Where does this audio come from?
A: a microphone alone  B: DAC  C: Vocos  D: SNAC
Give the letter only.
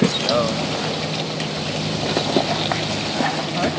A